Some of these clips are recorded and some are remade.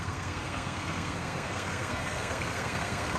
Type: remade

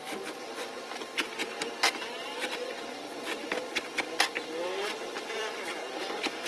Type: recorded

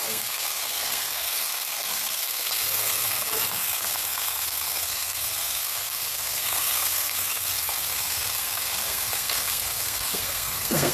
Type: remade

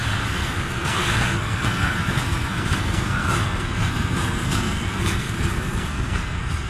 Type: remade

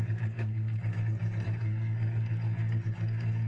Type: remade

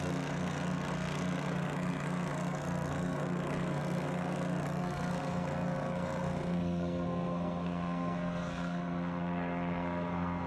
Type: remade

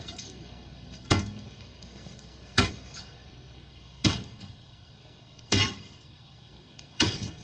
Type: remade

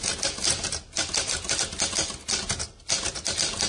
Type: recorded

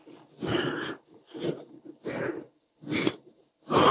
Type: recorded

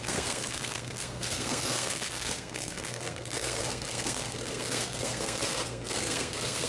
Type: remade